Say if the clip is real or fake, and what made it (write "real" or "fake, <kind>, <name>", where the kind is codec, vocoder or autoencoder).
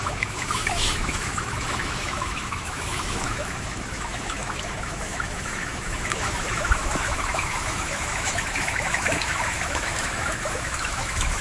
fake, autoencoder, DAC-VAE